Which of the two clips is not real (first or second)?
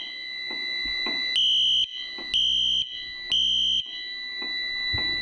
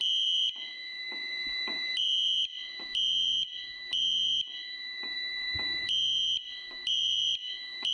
second